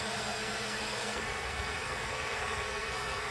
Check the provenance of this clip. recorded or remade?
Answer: remade